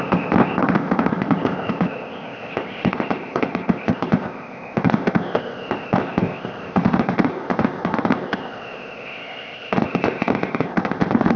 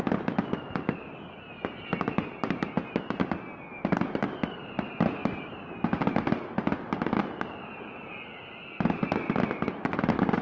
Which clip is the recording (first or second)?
second